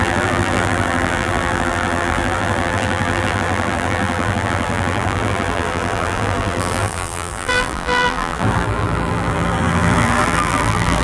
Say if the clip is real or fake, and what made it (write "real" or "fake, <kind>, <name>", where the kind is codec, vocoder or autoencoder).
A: fake, vocoder, BigVGAN v2